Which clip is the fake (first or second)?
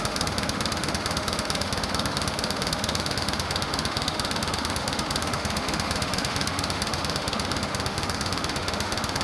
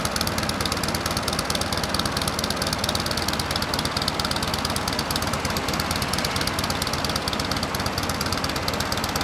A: first